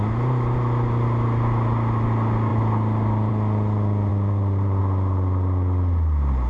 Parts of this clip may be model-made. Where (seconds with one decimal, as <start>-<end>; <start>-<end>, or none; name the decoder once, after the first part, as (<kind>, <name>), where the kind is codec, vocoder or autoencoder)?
4.1-4.8 (vocoder, BigVGAN v2)